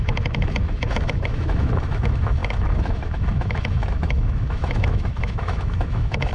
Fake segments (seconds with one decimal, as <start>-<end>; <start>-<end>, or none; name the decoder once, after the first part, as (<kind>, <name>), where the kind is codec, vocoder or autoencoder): 0.0-6.3 (autoencoder, DAC-VAE)